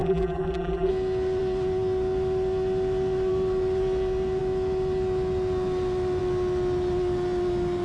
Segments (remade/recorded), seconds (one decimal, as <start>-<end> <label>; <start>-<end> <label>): 0.0-0.9 remade; 0.9-7.8 recorded